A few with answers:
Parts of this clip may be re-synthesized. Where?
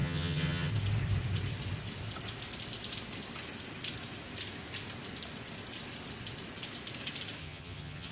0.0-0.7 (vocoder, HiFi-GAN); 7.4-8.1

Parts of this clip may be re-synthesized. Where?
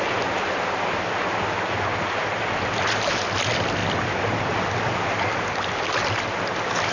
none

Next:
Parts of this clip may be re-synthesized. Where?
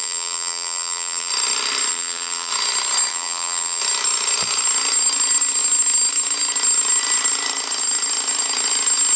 0.0-1.3 (vocoder, BigVGAN v2); 1.9-2.5; 3.1-3.8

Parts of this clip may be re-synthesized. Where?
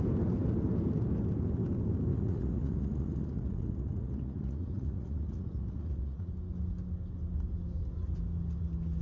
2.1-6.3 (vocoder, Vocos)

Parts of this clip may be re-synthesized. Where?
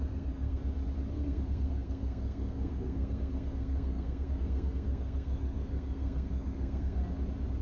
0.0-0.6 (codec, SNAC); 1.1-7.0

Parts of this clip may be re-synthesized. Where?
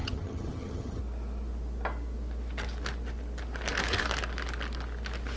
0.0-1.0 (vocoder, HiFi-GAN)